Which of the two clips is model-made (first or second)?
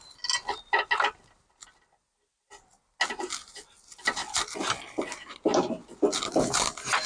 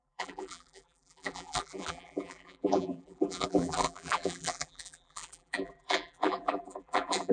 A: second